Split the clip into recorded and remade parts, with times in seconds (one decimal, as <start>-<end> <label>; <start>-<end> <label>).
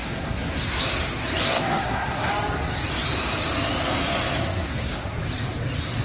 0.0-0.8 remade; 0.8-1.4 recorded; 1.4-2.3 remade; 2.3-4.4 recorded; 4.4-5.2 remade; 5.2-6.0 recorded